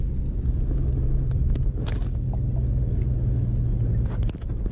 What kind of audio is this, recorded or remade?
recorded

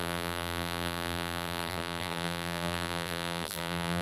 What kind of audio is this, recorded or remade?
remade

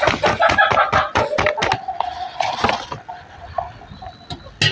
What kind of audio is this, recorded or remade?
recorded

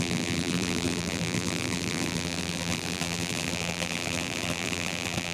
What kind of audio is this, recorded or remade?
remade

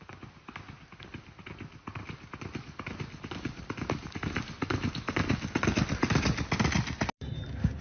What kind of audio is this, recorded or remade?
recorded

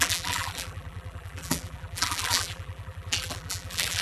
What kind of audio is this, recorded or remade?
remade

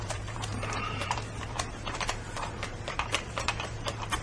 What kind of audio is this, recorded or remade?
remade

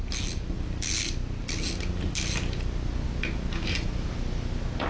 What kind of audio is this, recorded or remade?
recorded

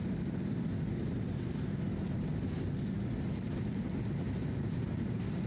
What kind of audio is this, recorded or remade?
recorded